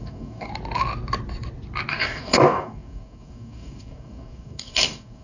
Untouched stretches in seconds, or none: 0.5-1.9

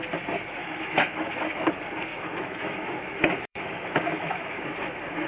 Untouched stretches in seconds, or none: 0.0-0.6; 1.7-2.1; 4.6-5.3

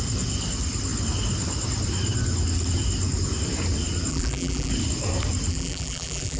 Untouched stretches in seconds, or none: 0.0-4.1; 4.7-5.5

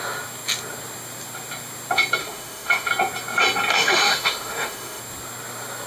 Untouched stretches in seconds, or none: 0.0-2.2; 2.9-3.7; 5.0-5.9